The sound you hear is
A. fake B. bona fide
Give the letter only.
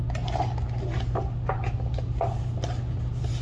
B